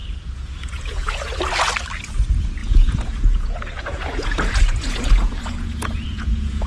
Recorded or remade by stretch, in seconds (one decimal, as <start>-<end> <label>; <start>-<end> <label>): 0.0-1.4 remade; 1.4-2.6 recorded; 2.6-6.7 remade